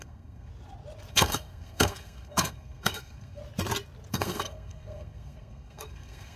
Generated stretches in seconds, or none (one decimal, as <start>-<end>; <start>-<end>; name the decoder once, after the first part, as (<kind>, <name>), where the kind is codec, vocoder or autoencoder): 0.0-0.5 (codec, SNAC); 1.1-3.4; 4.1-6.4